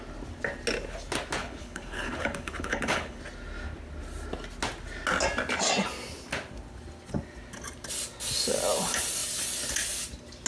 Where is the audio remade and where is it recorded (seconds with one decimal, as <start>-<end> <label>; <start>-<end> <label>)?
0.0-1.4 recorded; 1.4-3.2 remade; 3.2-10.5 recorded